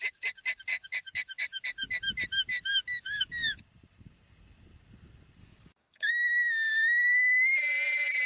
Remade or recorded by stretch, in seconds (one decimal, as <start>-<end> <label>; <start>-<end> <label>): 0.0-0.7 recorded; 0.7-2.0 remade; 2.0-2.7 recorded; 2.7-3.6 remade; 3.6-5.4 recorded; 5.4-6.1 remade; 6.1-8.3 recorded